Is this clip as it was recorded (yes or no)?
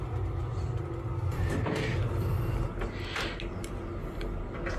yes